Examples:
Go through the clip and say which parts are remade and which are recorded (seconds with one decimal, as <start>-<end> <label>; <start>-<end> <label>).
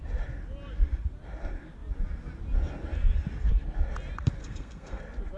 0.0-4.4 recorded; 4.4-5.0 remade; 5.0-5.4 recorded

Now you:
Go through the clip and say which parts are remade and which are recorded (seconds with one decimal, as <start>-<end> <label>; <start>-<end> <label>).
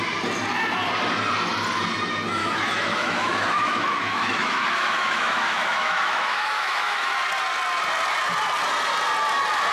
0.0-2.4 recorded; 2.4-7.1 remade; 7.1-9.7 recorded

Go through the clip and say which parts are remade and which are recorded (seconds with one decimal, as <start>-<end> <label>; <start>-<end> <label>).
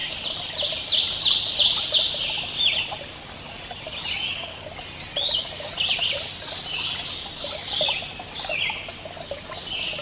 0.0-3.7 remade; 3.7-10.0 recorded